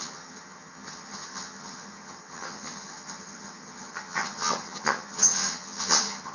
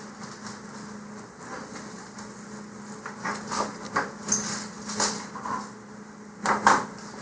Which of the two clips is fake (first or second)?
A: first